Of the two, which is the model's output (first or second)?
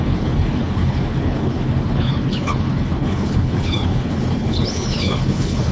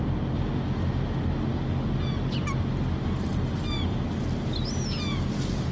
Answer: first